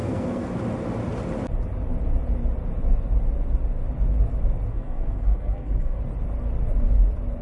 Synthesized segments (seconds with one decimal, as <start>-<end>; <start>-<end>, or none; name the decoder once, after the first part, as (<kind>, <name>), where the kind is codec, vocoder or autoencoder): 0.0-0.5 (codec, SNAC); 4.7-6.0